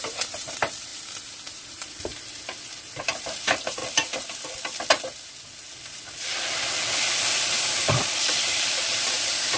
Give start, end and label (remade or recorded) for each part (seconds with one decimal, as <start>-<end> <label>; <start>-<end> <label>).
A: 0.0-0.9 remade; 0.9-1.5 recorded; 1.5-2.1 remade; 2.1-3.0 recorded; 3.0-3.8 remade; 3.8-8.2 recorded; 8.2-9.6 remade